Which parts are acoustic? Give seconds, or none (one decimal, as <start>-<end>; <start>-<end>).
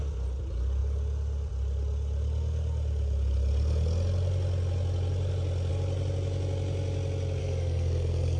0.0-7.4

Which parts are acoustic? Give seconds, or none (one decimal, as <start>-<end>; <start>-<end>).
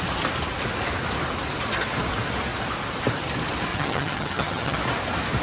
0.0-3.7; 4.8-5.4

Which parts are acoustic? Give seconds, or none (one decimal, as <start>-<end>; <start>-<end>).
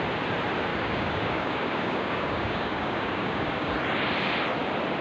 0.0-0.7; 3.7-5.0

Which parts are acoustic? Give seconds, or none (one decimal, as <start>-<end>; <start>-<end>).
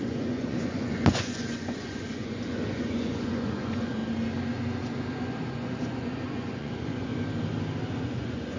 4.0-5.2; 7.1-8.0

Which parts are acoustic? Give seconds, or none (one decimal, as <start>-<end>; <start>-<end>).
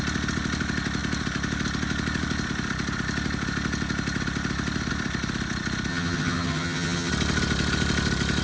0.0-5.9; 7.1-8.4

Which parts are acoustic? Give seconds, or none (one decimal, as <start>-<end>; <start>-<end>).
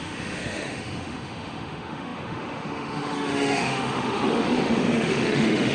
none